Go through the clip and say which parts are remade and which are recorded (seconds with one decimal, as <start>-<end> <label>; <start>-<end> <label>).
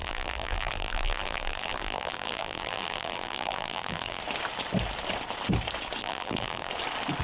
0.0-4.2 remade; 4.2-6.0 recorded; 6.0-6.7 remade; 6.7-7.2 recorded